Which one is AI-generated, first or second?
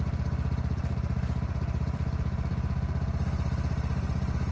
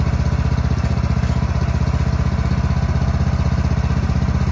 first